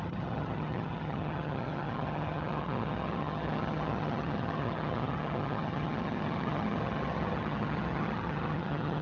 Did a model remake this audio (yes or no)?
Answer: yes